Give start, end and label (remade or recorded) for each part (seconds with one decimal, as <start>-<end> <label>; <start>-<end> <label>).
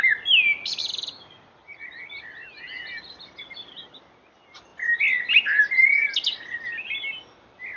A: 0.0-7.8 recorded